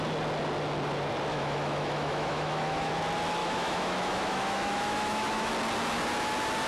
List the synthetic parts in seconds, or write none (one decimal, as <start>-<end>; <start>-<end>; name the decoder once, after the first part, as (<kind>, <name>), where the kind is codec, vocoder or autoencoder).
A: 1.3-2.9 (autoencoder, DAC-VAE); 3.4-5.5